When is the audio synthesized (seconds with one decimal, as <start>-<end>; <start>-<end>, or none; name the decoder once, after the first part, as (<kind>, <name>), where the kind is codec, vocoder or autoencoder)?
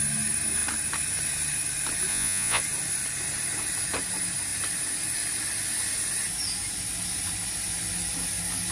2.1-2.6 (vocoder, Vocos)